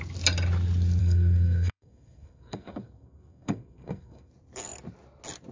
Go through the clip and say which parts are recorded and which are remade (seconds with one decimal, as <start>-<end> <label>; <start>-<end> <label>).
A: 0.0-1.0 recorded; 1.0-4.3 remade; 4.3-5.5 recorded